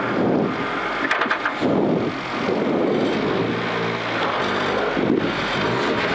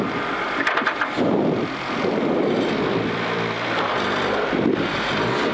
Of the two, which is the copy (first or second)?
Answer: second